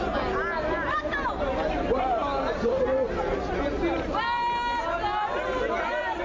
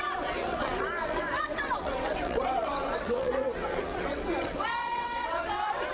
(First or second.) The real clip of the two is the first